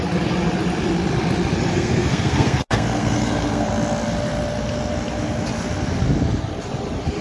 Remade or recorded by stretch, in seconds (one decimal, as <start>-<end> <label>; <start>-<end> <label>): 0.0-1.7 recorded; 1.7-3.7 remade; 3.7-7.2 recorded